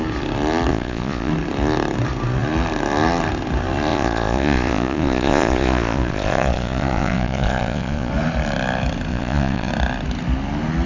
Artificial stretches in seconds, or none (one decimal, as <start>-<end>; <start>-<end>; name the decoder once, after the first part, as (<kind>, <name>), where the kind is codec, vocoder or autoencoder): 0.7-1.3 (vocoder, Vocos); 3.9-8.1; 9.1-9.7